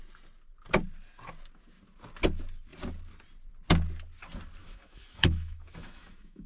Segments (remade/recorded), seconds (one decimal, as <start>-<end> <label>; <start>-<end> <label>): 0.0-4.6 recorded; 4.6-6.5 remade